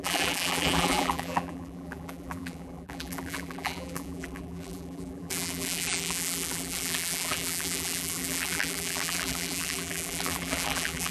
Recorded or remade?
remade